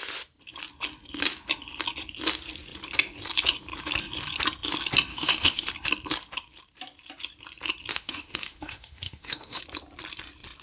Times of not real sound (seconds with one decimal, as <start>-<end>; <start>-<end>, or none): 5.1-5.7; 7.9-9.6